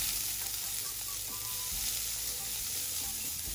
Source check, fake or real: fake